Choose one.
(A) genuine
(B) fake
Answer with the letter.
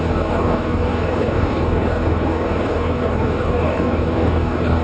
B